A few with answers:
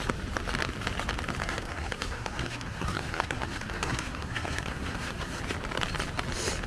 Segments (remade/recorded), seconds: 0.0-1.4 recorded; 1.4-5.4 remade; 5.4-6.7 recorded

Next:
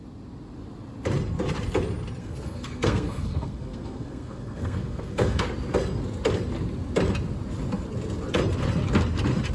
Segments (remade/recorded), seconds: 0.0-2.2 recorded; 2.2-5.4 remade; 5.4-9.5 recorded

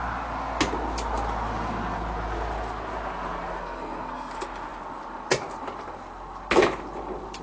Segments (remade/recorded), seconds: 0.0-3.6 recorded; 3.6-4.3 remade; 4.3-7.4 recorded

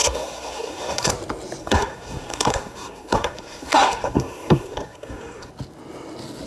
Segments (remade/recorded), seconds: 0.0-1.1 remade; 1.1-1.6 recorded; 1.6-5.5 remade; 5.5-6.5 recorded